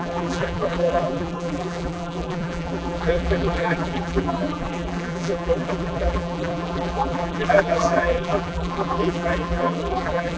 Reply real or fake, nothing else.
fake